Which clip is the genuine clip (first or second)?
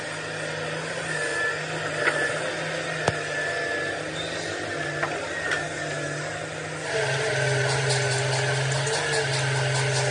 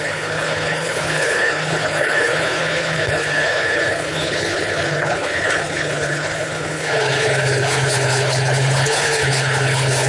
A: first